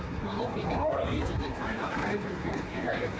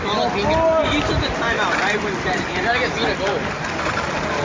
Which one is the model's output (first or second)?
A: first